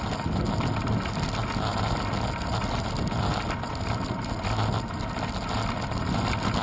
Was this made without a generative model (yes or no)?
yes